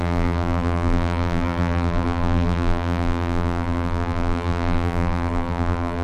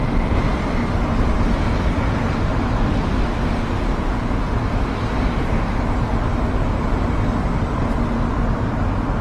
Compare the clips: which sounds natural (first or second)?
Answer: second